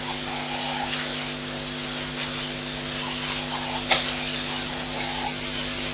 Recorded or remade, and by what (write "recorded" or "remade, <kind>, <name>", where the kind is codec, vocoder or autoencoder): recorded